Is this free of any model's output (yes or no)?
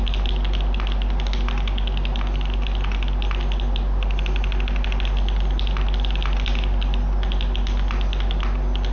yes